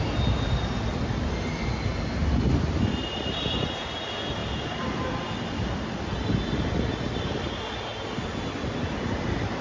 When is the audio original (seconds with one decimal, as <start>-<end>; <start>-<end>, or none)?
0.0-4.4; 6.7-9.6